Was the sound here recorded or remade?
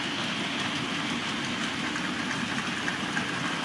recorded